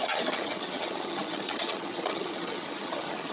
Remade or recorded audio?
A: remade